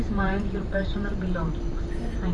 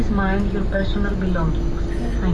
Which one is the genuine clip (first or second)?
second